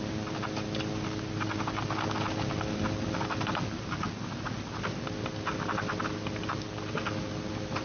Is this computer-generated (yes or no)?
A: no